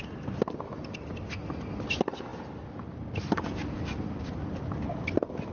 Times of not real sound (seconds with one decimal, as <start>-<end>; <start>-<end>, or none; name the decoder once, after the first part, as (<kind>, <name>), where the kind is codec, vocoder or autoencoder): none